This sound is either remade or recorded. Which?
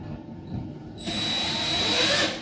recorded